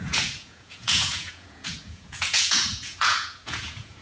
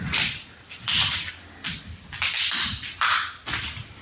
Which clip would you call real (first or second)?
second